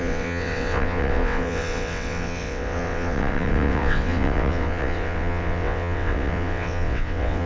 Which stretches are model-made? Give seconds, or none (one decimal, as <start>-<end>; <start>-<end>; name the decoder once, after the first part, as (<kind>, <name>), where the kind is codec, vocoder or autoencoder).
0.0-7.5 (vocoder, WaveNeXt)